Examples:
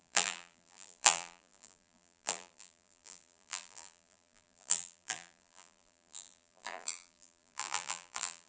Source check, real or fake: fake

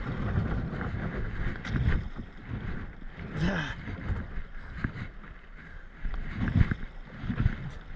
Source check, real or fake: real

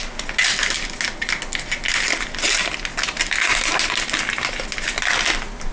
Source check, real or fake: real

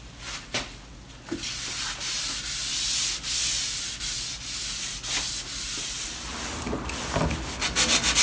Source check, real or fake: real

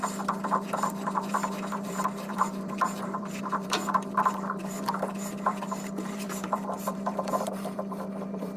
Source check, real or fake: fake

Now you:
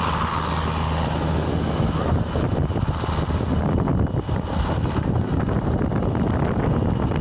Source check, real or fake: real